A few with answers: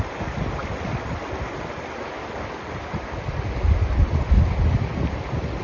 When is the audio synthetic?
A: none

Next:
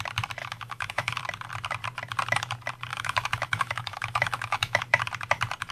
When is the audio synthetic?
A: 0.4-1.2 (autoencoder, DAC-VAE); 2.9-4.8

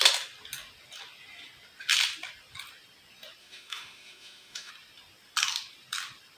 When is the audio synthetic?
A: 3.4-4.7 (autoencoder, DAC-VAE)

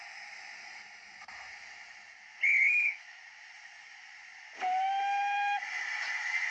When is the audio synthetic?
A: 2.7-3.2 (autoencoder, DAC-VAE)

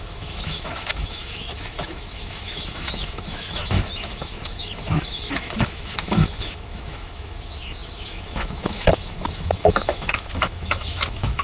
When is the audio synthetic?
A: 0.0-11.4 (autoencoder, DAC-VAE)